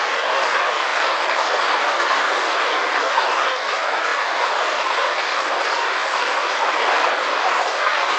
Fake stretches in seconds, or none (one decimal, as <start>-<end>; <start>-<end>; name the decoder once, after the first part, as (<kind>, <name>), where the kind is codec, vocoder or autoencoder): 0.0-8.2 (codec, DAC)